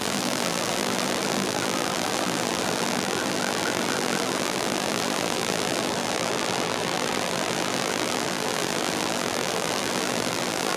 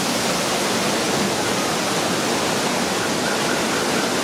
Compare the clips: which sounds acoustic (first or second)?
second